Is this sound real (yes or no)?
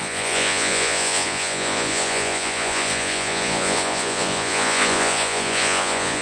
no